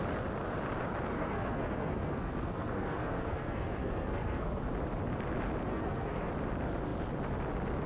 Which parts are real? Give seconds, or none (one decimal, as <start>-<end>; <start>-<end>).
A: 0.0-1.1; 4.6-5.7; 6.3-7.9